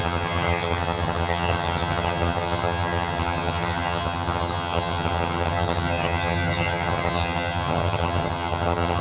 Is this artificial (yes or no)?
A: yes